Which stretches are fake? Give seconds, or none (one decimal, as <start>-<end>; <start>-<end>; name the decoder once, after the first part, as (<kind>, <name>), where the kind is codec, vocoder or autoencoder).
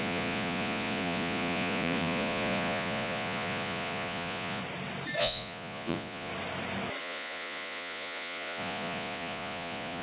0.0-4.6 (vocoder, Vocos); 5.2-6.3; 7.0-10.0